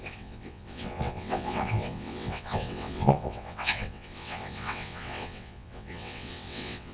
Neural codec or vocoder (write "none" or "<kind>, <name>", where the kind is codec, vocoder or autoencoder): vocoder, WaveNeXt